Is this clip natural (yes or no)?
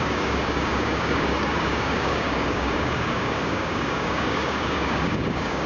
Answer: no